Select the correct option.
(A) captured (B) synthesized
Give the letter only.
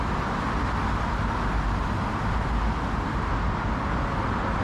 A